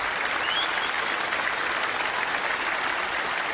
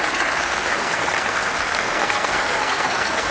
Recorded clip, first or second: first